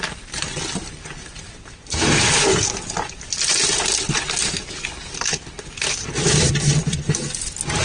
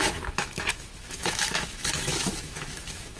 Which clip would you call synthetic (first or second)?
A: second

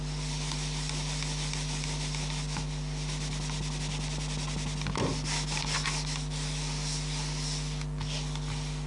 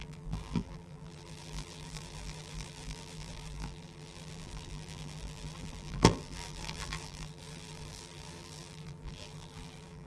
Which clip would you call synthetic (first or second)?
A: second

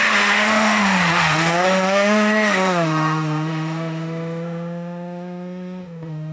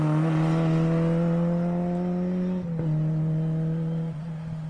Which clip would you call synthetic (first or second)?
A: first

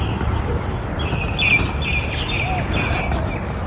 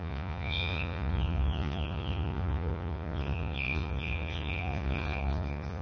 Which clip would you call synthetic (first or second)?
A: second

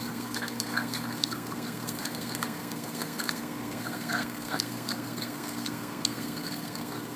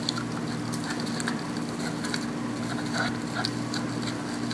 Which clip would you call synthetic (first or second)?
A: first